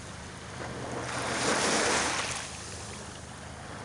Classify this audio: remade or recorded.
recorded